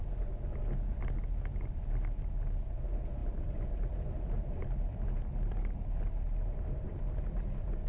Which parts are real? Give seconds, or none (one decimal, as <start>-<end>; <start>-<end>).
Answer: 0.0-3.2